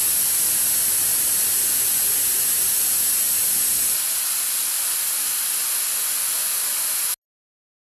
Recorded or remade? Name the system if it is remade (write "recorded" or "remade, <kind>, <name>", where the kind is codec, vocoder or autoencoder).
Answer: recorded